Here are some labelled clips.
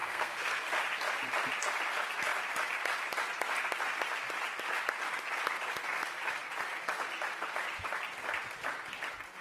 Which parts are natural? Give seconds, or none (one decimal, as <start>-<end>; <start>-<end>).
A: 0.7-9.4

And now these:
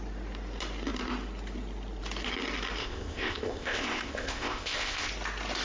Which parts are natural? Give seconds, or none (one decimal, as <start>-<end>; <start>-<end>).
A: 0.0-2.8; 5.1-5.6

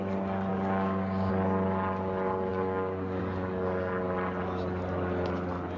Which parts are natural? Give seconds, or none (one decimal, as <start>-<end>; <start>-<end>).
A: 0.0-0.5; 1.3-2.5; 3.2-5.8

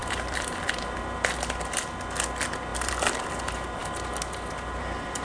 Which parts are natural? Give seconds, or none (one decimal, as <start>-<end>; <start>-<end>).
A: 0.8-2.7; 3.3-5.2

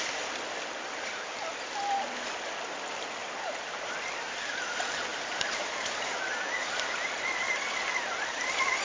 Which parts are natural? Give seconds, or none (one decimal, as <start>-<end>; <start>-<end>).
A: 0.0-3.2; 3.9-5.1; 6.2-8.8